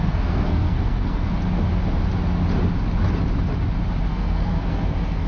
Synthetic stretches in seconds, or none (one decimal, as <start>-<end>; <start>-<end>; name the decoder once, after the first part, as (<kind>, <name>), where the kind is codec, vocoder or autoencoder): 0.0-1.3 (codec, SNAC); 4.1-5.3